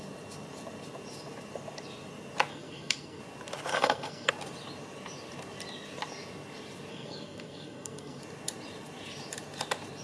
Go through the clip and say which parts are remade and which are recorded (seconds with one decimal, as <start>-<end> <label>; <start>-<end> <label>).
0.0-2.5 recorded; 2.5-3.2 remade; 3.2-3.7 recorded; 3.7-4.3 remade; 4.3-6.9 recorded; 6.9-8.2 remade; 8.2-10.0 recorded